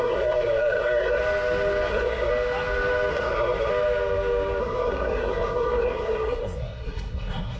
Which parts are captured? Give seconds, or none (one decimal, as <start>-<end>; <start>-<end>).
1.2-1.9; 2.3-3.1; 3.7-4.6